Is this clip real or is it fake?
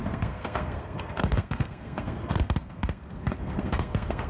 fake